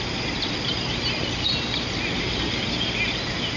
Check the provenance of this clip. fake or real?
real